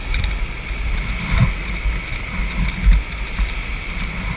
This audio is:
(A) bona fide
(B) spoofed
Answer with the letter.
A